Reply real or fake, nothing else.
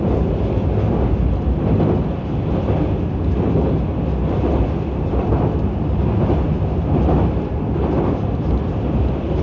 real